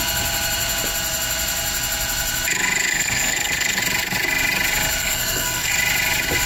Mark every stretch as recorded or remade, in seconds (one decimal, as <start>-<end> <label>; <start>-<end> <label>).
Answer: 0.0-2.9 recorded; 2.9-3.8 remade; 3.8-5.0 recorded; 5.0-5.7 remade; 5.7-6.5 recorded

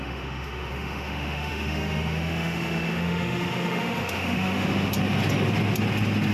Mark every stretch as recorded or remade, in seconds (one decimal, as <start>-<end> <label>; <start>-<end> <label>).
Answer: 0.0-4.9 remade; 4.9-6.3 recorded

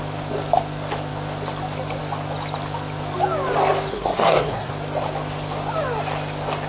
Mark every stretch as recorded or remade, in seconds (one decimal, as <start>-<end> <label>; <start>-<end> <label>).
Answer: 0.0-3.9 recorded; 3.9-4.7 remade; 4.7-6.7 recorded

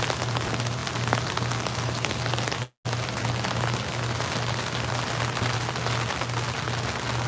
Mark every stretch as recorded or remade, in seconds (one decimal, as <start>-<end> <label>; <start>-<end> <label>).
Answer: 0.0-7.3 recorded

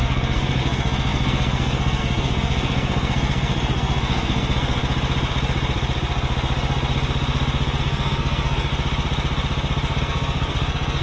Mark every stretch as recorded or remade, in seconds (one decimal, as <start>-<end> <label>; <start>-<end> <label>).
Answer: 0.0-4.8 remade; 4.8-7.8 recorded; 7.8-8.7 remade; 8.7-10.0 recorded; 10.0-11.0 remade